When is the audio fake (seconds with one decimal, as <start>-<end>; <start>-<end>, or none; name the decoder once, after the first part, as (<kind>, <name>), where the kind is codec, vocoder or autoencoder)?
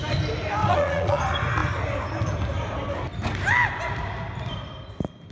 0.6-1.2 (vocoder, Vocos)